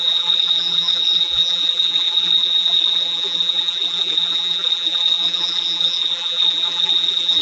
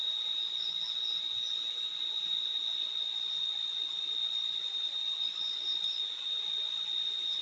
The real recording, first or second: second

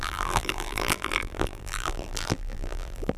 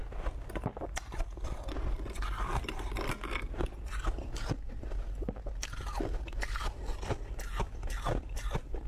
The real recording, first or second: second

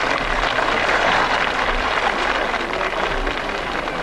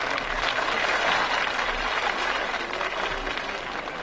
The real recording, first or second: second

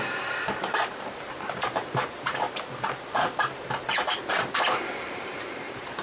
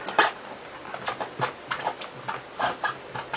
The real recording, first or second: second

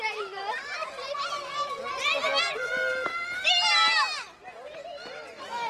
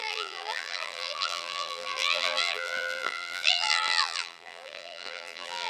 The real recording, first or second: first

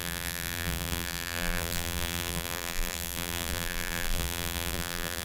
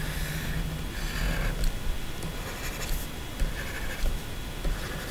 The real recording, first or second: second